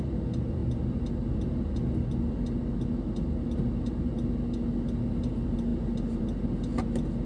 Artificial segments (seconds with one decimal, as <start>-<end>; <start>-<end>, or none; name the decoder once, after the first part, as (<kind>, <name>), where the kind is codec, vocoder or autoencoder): none